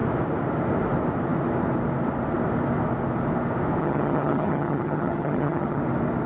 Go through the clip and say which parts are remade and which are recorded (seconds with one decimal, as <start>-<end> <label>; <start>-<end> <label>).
0.0-3.8 recorded; 3.8-5.8 remade; 5.8-6.3 recorded